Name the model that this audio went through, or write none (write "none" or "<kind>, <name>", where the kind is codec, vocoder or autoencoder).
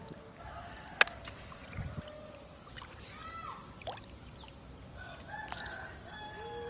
none